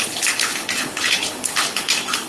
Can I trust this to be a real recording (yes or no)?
no